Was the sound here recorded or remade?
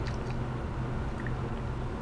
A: recorded